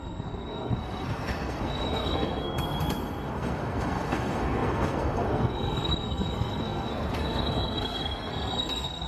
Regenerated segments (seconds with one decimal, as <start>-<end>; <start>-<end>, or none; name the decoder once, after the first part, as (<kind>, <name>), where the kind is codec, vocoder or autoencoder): 0.0-9.1 (codec, SNAC)